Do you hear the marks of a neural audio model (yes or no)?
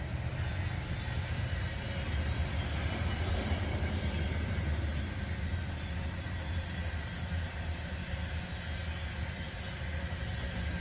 no